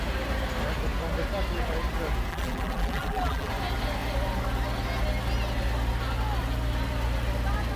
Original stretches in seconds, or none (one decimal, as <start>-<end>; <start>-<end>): 0.0-2.3; 3.5-7.8